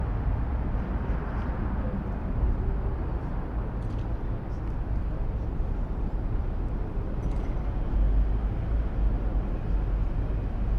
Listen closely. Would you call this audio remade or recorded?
recorded